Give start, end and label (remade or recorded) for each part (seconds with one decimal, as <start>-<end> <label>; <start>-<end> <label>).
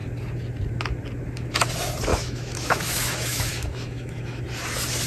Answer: 0.0-2.1 recorded; 2.1-4.4 remade; 4.4-5.1 recorded